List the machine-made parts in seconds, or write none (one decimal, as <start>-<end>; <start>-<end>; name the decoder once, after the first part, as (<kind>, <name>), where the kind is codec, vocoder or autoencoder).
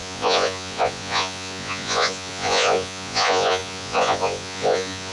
0.0-5.1 (vocoder, Vocos)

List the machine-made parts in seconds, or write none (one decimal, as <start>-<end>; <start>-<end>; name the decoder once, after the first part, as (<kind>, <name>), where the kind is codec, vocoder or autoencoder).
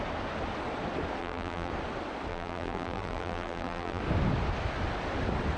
1.2-1.7 (vocoder, BigVGAN v2); 2.3-4.0